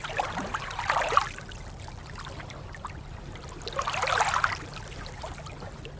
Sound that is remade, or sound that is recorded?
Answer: recorded